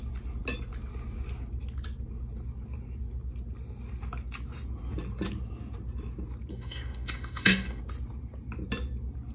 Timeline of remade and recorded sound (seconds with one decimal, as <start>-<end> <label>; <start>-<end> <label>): 0.0-6.5 recorded; 6.5-7.8 remade; 7.8-9.3 recorded